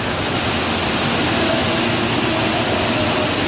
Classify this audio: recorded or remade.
recorded